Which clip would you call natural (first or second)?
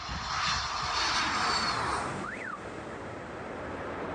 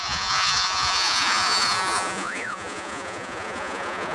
first